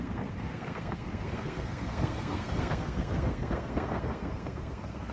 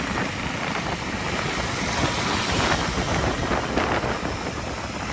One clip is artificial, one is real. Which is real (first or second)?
second